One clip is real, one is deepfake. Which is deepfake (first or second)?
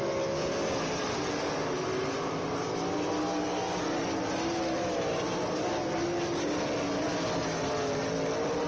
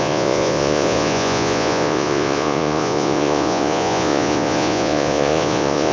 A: second